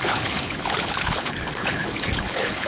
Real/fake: fake